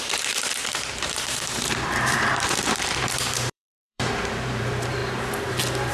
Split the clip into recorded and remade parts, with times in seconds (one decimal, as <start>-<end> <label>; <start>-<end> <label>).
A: 0.0-5.0 remade; 5.0-5.9 recorded